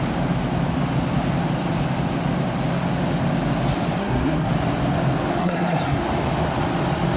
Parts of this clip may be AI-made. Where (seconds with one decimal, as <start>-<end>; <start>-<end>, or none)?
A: 4.0-4.5; 5.4-6.0